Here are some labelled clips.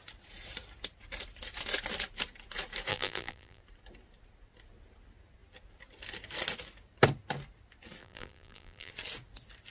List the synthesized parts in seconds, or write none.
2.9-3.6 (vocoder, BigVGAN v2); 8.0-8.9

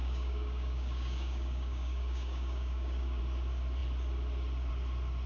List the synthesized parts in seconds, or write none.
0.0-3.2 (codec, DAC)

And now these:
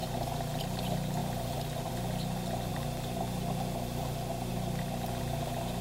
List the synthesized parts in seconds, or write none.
1.2-1.9 (vocoder, BigVGAN v2); 2.7-3.2

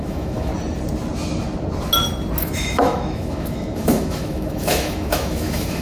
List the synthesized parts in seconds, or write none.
0.0-0.5 (autoencoder, DAC-VAE); 2.4-5.8